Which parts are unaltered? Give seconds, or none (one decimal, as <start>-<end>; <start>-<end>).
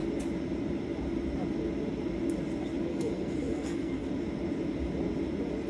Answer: 0.0-2.9; 4.1-5.7